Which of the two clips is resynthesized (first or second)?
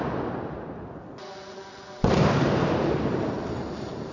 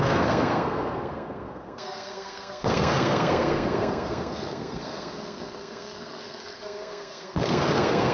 second